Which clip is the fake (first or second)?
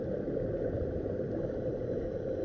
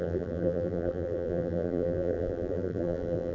second